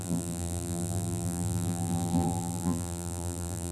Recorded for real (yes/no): no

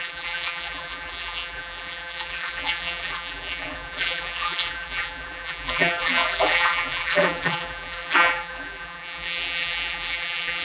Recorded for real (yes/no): no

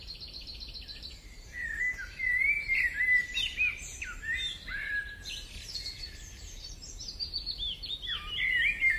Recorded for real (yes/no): no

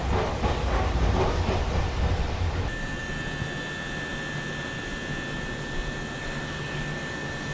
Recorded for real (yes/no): yes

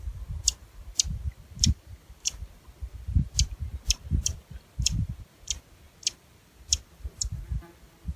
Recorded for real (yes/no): no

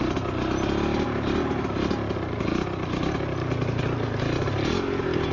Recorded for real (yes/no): yes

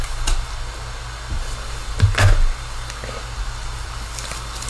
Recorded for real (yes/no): yes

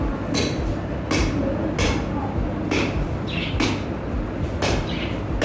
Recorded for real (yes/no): yes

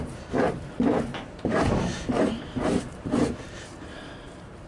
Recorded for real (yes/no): no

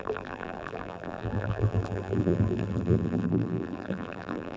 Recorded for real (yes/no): no